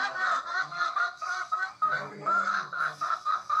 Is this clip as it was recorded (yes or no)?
no